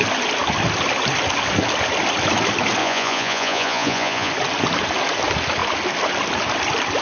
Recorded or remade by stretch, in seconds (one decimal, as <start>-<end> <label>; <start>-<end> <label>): 0.0-2.8 recorded; 2.8-4.3 remade; 4.3-7.0 recorded